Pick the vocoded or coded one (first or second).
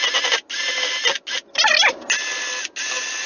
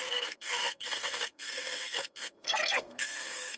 second